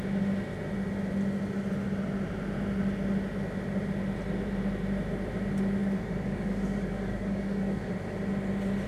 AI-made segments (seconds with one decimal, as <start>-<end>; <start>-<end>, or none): 5.8-7.9